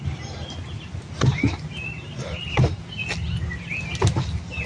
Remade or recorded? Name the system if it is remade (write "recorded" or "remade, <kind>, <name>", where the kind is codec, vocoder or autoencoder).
recorded